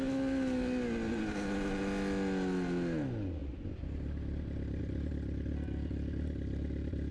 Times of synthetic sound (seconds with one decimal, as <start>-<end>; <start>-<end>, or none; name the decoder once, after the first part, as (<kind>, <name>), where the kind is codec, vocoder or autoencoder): none